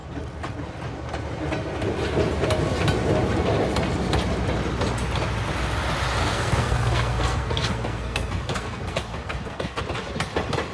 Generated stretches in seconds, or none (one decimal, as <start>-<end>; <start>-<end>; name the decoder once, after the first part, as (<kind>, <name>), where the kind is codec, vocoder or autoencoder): 6.2-9.8 (codec, SNAC)